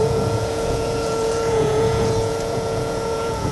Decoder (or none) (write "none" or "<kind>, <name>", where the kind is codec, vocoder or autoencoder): vocoder, Vocos